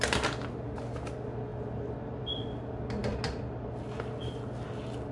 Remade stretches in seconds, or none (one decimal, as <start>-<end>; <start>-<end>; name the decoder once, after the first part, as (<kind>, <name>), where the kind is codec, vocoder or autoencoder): none